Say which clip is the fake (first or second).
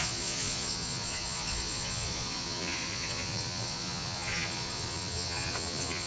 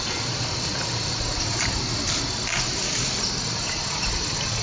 first